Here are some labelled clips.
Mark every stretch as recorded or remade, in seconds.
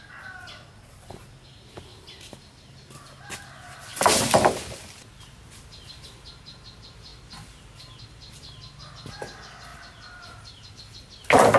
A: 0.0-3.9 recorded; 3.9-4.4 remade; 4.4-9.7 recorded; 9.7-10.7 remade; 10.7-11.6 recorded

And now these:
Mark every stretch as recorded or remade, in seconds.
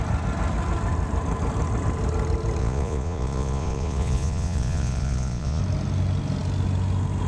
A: 0.0-2.6 recorded; 2.6-5.6 remade; 5.6-7.3 recorded